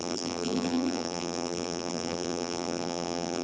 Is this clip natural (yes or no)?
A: no